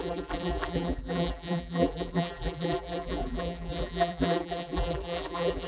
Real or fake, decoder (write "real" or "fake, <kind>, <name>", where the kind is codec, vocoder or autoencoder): fake, vocoder, BigVGAN v2